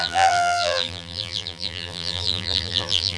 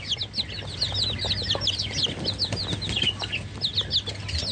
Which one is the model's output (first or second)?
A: first